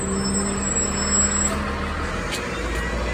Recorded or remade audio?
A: recorded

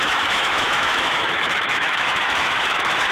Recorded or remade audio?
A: remade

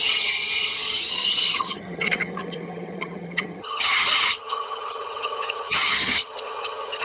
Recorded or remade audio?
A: remade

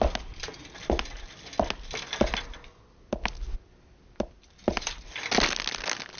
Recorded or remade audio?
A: recorded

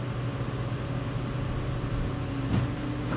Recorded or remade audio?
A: recorded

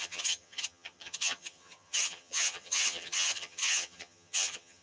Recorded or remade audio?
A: remade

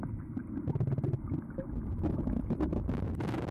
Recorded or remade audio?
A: recorded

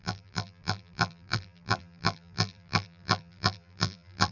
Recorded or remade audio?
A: remade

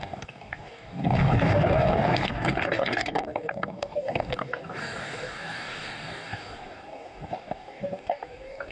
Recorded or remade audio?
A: remade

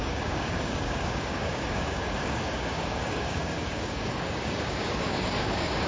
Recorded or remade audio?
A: remade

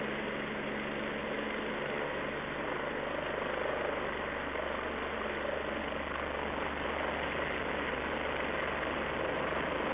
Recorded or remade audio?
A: recorded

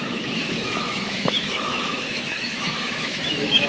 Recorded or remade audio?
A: remade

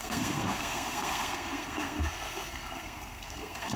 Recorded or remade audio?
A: remade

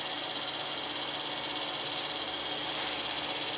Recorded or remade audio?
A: recorded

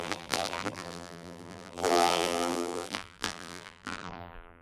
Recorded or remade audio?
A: remade